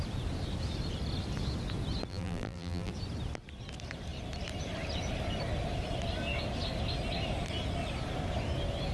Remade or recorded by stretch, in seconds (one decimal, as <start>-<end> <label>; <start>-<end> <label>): 0.0-2.1 recorded; 2.1-2.9 remade; 2.9-8.9 recorded